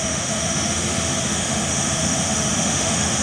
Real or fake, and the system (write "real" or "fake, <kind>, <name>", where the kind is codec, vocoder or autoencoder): fake, autoencoder, DAC-VAE